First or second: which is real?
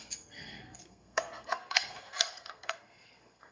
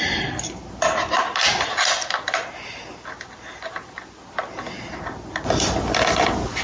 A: second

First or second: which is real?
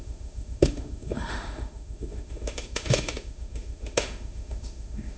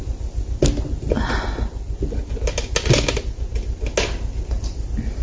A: second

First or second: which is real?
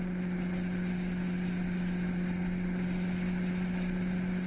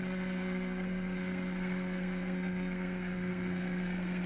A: first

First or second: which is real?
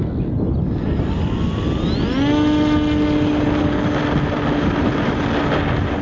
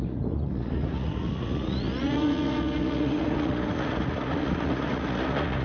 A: first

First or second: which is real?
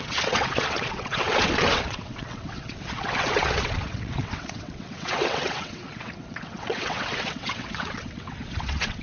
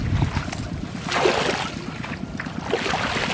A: second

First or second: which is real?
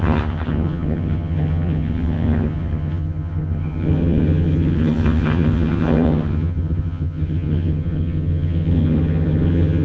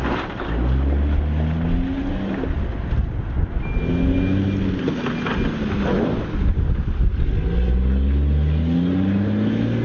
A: second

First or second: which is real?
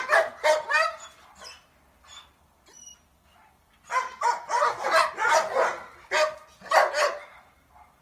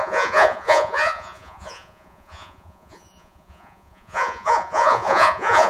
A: first